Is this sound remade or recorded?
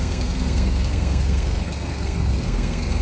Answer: remade